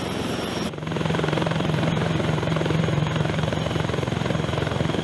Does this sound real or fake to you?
fake